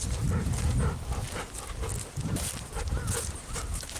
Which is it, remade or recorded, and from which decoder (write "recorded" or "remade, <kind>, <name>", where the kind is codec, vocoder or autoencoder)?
recorded